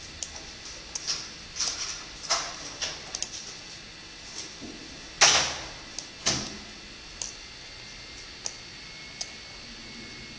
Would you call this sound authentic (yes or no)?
yes